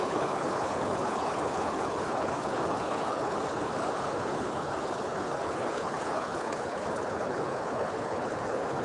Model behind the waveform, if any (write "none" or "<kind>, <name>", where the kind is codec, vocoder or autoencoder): codec, HILCodec